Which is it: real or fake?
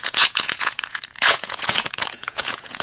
fake